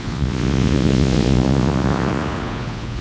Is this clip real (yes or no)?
no